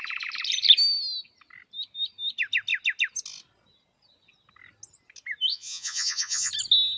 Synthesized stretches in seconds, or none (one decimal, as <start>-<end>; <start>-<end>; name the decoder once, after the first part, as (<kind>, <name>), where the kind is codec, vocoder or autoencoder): 5.5-6.5 (vocoder, Vocos)